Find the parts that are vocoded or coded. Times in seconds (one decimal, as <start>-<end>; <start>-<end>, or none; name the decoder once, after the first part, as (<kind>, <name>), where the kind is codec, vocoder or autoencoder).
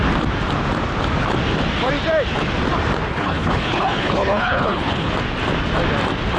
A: 3.1-5.1 (codec, HILCodec)